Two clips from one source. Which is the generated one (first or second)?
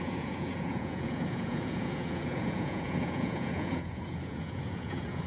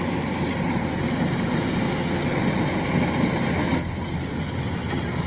first